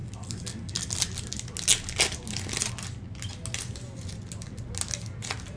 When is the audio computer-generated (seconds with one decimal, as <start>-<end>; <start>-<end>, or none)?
none